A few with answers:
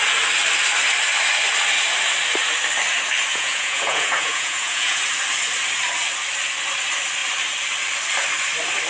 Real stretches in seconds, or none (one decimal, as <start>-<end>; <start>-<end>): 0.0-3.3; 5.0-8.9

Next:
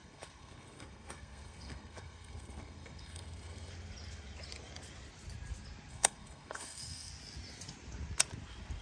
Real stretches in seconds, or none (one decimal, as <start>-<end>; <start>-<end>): 3.7-5.9; 7.1-8.8

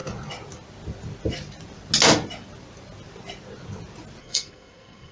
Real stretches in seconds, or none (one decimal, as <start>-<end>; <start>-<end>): 0.0-4.2

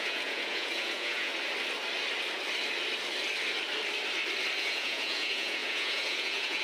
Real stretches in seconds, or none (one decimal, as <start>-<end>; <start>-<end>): 1.3-4.6

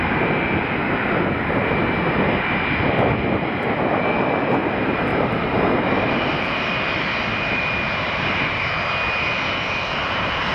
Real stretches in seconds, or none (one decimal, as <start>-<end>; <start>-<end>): 0.0-5.1; 6.1-7.3; 8.6-10.5

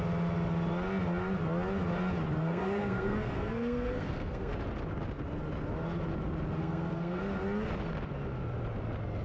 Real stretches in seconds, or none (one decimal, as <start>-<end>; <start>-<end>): 0.0-2.4; 4.5-6.6; 7.2-9.2

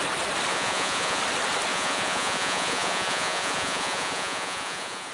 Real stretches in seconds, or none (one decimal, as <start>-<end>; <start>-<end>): 0.0-0.5; 1.2-1.7